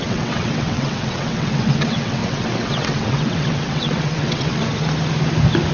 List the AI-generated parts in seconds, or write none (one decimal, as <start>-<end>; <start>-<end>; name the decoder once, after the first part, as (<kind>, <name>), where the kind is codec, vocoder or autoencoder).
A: 0.0-4.6 (vocoder, WaveNeXt)